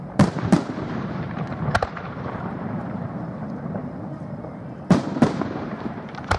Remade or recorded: remade